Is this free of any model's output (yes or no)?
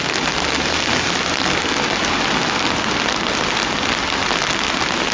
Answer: yes